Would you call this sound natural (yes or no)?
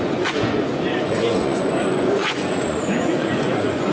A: no